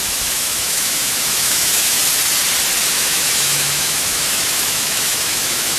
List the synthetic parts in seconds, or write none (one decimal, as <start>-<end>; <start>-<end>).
0.0-2.0; 2.9-5.8